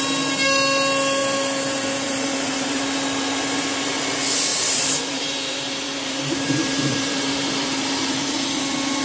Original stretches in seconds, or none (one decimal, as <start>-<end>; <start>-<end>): 0.0-1.2; 2.8-4.5; 8.6-9.0